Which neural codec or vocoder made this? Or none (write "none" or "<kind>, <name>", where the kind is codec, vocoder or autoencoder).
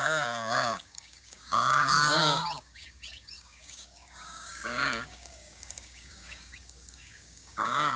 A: codec, DAC